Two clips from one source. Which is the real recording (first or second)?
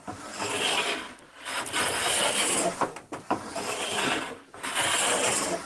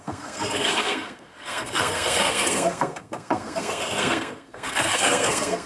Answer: first